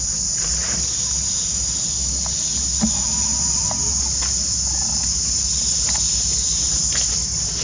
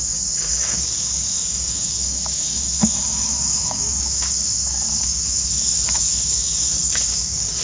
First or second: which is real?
first